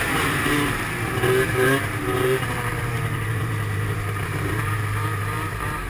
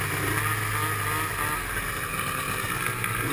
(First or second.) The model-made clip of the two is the first